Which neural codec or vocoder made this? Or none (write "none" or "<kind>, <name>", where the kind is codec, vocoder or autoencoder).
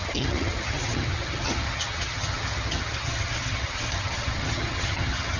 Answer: vocoder, HiFi-GAN